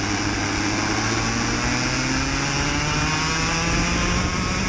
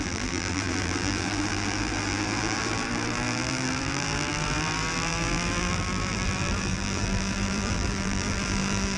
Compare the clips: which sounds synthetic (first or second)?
second